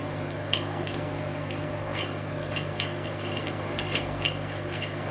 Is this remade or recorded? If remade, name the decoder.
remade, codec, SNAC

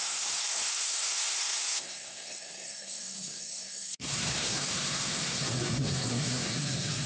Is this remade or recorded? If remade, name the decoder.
remade, codec, SNAC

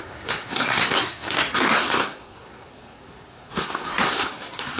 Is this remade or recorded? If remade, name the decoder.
remade, codec, SNAC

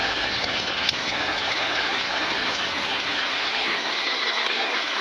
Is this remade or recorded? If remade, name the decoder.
remade, codec, SNAC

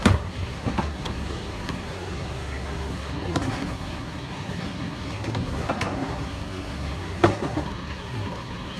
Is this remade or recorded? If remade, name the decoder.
remade, codec, SNAC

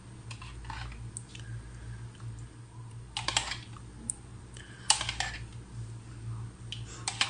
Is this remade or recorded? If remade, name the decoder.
recorded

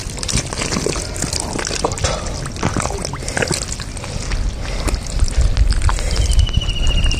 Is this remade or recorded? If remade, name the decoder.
recorded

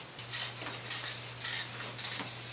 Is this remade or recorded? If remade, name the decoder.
recorded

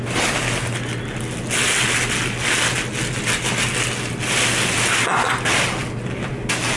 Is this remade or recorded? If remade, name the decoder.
recorded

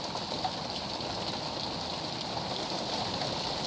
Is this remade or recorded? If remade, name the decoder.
recorded